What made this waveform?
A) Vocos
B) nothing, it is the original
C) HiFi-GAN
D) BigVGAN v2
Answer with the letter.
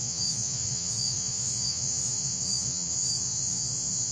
A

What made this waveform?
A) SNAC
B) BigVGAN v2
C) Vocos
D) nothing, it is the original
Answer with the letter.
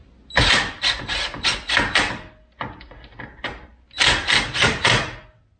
D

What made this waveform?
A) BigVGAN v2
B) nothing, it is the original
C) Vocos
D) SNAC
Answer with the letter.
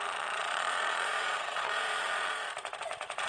C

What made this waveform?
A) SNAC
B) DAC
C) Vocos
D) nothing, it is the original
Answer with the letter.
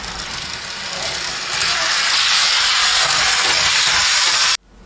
D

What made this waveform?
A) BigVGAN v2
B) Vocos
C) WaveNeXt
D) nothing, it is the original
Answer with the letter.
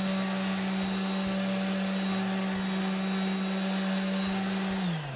D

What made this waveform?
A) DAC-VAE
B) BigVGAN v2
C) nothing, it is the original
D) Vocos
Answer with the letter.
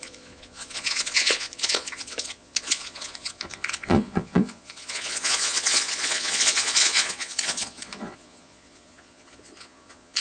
D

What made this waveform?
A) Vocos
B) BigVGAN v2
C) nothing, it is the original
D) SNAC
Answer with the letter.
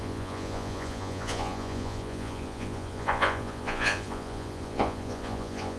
A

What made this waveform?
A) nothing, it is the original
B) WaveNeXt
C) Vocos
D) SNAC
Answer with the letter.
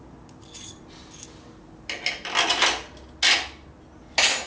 A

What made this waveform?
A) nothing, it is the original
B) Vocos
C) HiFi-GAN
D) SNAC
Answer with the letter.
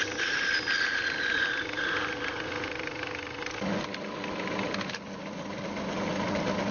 A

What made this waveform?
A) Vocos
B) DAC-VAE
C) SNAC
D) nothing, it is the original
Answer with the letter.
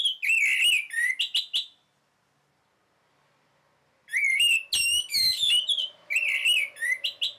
D